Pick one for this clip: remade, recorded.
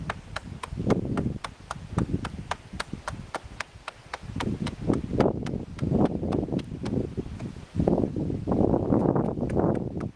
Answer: recorded